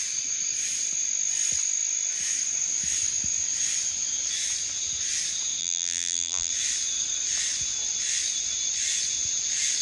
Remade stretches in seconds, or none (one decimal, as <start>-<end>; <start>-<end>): 5.6-6.5